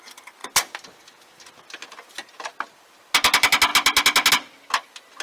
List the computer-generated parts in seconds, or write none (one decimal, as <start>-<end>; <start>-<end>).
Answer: none